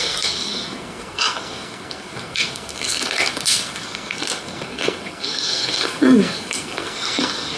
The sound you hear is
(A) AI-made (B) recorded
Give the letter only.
A